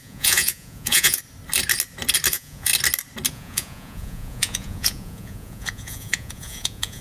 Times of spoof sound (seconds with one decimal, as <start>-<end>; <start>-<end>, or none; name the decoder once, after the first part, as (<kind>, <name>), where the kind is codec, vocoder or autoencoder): 0.0-1.2 (vocoder, Vocos); 2.3-2.7; 3.3-7.0